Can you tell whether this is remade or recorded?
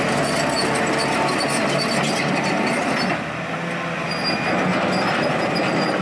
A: recorded